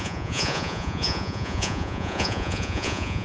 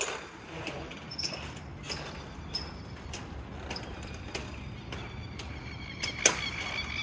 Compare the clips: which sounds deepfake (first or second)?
first